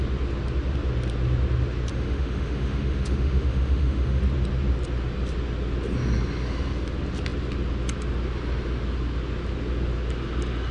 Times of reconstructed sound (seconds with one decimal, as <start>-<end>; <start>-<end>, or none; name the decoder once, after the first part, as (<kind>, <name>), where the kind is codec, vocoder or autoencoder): 1.9-4.2 (autoencoder, DAC-VAE)